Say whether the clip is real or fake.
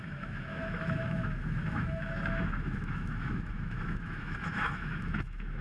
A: fake